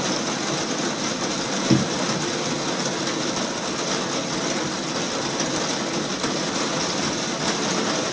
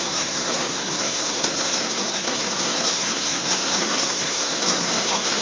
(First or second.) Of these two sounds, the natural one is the first